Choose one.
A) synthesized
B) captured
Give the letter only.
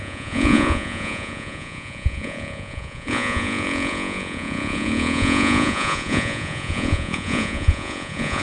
A